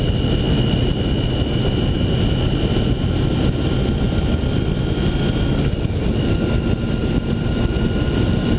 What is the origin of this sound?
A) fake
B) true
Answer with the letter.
B